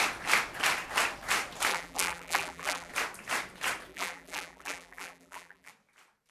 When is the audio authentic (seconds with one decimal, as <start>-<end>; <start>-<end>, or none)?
0.0-1.7; 2.9-3.9; 5.7-6.3